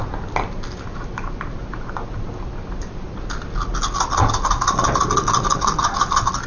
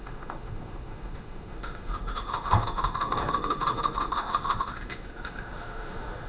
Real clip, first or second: first